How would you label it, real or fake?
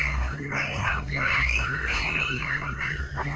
fake